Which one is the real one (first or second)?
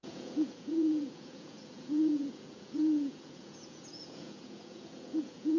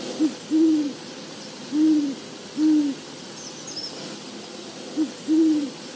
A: second